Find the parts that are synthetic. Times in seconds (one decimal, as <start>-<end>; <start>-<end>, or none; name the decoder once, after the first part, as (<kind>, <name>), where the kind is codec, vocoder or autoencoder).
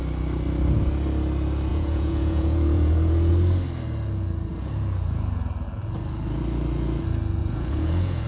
1.7-3.3 (vocoder, Vocos); 7.4-8.3